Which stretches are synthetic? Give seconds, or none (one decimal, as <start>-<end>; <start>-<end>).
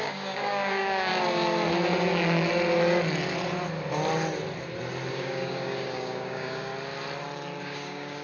0.0-1.1; 5.1-6.7; 7.6-8.2